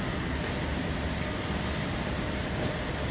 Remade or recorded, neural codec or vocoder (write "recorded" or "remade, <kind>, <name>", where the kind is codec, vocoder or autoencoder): recorded